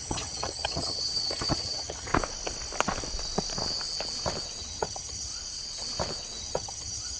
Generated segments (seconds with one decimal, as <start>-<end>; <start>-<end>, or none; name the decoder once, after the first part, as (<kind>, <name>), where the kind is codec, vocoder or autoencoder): 0.0-2.1 (vocoder, HiFi-GAN); 4.6-5.3; 6.4-7.2